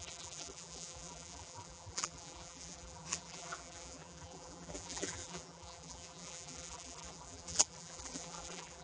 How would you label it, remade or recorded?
remade